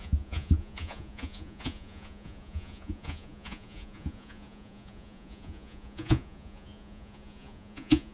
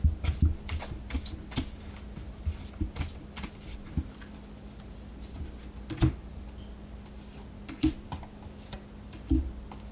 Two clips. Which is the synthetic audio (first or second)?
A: first